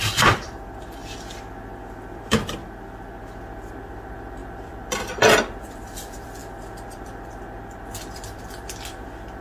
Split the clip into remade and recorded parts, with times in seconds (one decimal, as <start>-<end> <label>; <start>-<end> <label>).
0.0-1.0 remade; 1.0-1.9 recorded; 1.9-9.4 remade